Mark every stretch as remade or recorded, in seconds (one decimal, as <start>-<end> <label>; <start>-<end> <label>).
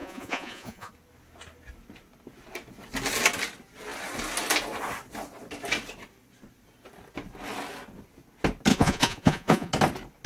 0.0-0.9 remade; 0.9-8.7 recorded; 8.7-9.7 remade; 9.7-10.3 recorded